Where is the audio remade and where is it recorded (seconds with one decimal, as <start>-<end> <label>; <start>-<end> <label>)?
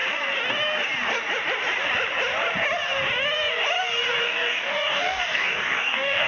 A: 0.0-4.2 recorded; 4.2-6.3 remade